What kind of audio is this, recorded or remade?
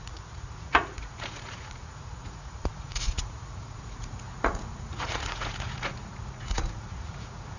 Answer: remade